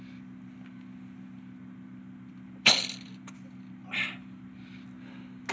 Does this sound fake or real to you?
real